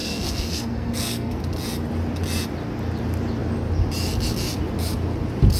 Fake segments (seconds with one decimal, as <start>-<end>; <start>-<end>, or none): 0.0-1.4